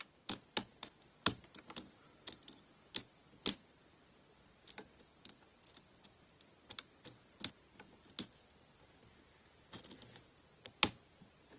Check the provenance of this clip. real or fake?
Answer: real